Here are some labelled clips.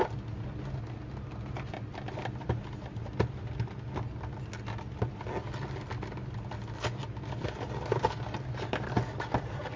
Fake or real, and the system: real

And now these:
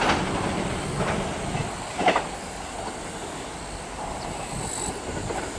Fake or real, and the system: real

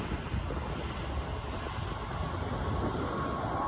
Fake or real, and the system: real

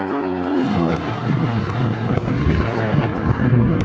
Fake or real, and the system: fake, codec, SNAC